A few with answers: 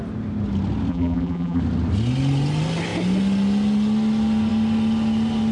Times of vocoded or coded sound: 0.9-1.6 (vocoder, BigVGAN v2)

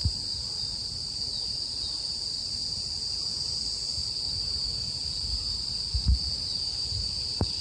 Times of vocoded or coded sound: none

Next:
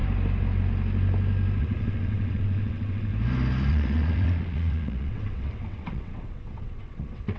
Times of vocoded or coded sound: 1.6-3.1 (vocoder, WaveNeXt); 3.7-7.4